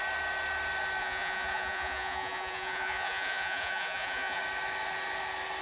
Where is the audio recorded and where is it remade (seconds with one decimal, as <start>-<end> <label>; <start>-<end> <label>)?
0.0-1.0 recorded; 1.0-4.4 remade; 4.4-5.6 recorded